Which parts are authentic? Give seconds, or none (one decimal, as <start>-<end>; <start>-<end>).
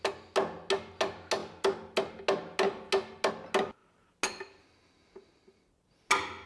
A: 0.0-6.5